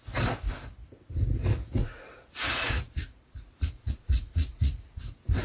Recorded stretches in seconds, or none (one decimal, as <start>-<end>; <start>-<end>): 0.0-1.8; 5.0-5.4